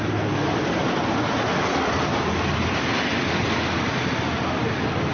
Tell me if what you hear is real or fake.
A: real